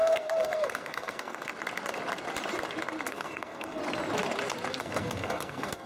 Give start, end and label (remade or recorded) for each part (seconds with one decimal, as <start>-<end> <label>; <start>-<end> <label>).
0.0-1.5 remade; 1.5-3.1 recorded; 3.1-3.8 remade; 3.8-4.8 recorded; 4.8-5.9 remade